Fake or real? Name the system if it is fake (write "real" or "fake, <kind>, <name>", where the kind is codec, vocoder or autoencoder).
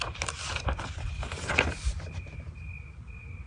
real